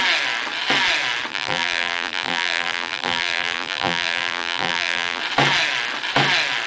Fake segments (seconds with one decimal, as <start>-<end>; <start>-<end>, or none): 1.3-5.2